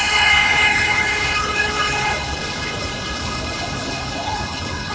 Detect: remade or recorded remade